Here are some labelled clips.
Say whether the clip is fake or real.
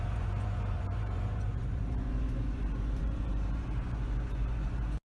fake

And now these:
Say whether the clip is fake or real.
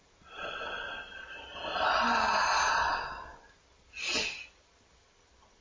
real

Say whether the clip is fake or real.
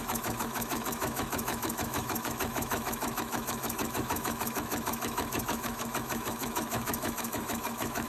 fake